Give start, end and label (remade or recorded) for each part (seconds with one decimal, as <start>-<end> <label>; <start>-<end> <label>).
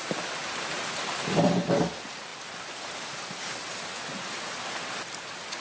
0.0-0.4 recorded; 0.4-1.7 remade; 1.7-5.6 recorded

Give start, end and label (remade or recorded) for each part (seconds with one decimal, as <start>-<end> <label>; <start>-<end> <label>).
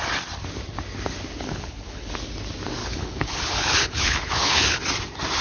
0.0-1.3 recorded; 1.3-2.1 remade; 2.1-2.8 recorded; 2.8-4.8 remade; 4.8-5.4 recorded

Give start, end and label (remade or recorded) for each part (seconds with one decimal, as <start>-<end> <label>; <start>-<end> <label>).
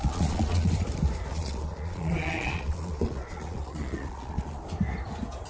0.0-0.7 remade; 0.7-1.3 recorded; 1.3-4.6 remade; 4.6-5.5 recorded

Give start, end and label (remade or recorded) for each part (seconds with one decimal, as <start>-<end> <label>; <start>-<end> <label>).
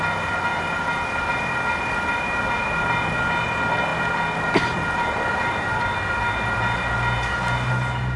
0.0-8.2 recorded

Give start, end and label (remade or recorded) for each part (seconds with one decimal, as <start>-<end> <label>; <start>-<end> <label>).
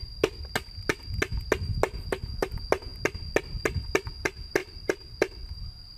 0.0-6.0 recorded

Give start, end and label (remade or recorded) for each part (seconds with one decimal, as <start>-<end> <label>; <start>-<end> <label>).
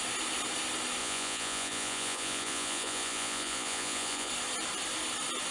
0.0-1.0 recorded; 1.0-4.3 remade; 4.3-5.5 recorded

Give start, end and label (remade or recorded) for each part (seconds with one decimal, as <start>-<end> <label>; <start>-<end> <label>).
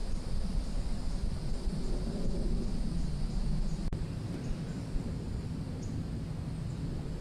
0.0-2.3 remade; 2.3-3.8 recorded; 3.8-5.1 remade; 5.1-7.2 recorded